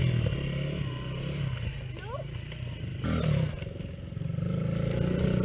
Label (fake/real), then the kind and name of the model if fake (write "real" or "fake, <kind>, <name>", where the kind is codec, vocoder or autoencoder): real